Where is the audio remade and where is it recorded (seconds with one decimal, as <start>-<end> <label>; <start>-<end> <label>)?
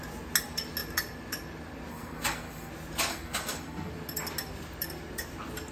0.0-1.9 recorded; 1.9-2.7 remade; 2.7-3.1 recorded; 3.1-3.9 remade; 3.9-5.7 recorded